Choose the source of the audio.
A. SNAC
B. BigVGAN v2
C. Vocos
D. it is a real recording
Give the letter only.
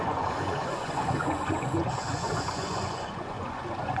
C